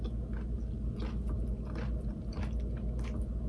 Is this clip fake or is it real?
real